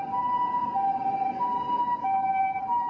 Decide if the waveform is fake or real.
real